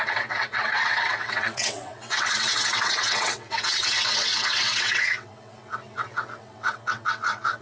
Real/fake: fake